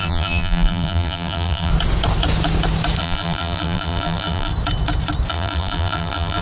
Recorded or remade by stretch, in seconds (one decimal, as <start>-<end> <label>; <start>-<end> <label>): 0.0-1.7 remade; 1.7-3.0 recorded; 3.0-4.5 remade; 4.5-5.3 recorded; 5.3-6.4 remade